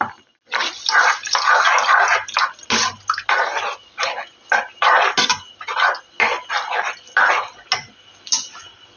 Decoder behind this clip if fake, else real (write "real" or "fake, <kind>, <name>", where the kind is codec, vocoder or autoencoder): real